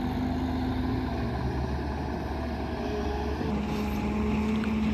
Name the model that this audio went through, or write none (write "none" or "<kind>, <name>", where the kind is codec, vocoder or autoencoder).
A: none